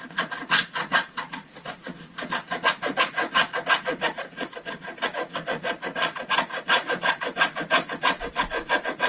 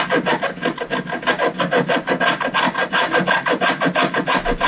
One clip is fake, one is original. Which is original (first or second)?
second